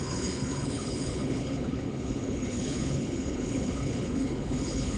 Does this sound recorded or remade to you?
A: remade